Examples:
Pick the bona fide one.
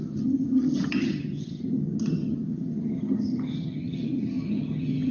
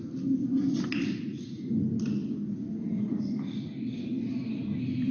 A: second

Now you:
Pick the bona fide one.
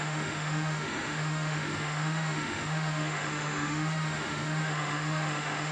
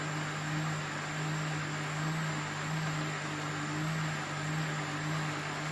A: second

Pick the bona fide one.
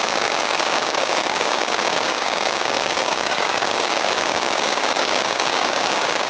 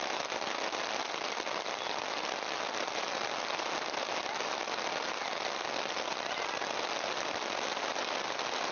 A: second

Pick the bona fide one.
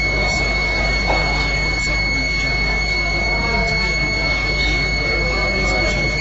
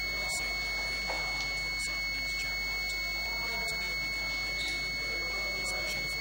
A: second